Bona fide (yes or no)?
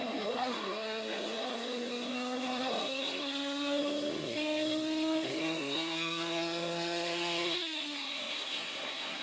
no